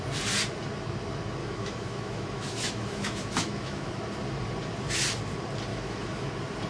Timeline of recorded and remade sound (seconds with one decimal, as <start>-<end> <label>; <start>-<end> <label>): 0.0-1.4 recorded; 1.4-3.9 remade; 3.9-5.7 recorded; 5.7-6.3 remade; 6.3-6.7 recorded